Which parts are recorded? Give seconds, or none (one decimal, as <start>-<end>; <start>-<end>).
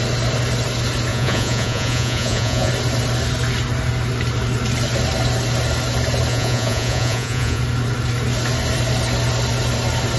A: 0.0-1.1; 2.7-6.3; 7.6-10.2